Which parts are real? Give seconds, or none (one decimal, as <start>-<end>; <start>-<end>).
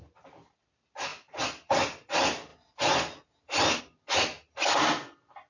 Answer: 0.0-5.5